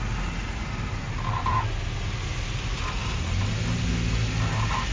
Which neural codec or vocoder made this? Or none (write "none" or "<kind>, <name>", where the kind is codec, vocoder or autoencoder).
none